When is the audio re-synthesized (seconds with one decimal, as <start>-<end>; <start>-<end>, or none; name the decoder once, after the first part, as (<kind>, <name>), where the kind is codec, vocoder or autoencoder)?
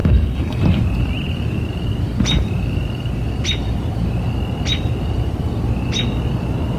0.0-0.6 (codec, SNAC)